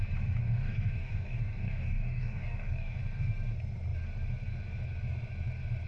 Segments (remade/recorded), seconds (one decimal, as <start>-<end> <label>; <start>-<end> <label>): 0.0-0.4 recorded; 0.4-3.0 remade; 3.0-5.9 recorded